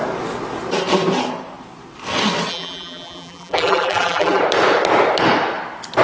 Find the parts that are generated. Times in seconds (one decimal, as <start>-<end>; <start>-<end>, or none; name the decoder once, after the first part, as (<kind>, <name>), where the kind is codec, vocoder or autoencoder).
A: 2.5-4.4 (vocoder, BigVGAN v2)